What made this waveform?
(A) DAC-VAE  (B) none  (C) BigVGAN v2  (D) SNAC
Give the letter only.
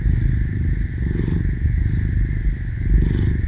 B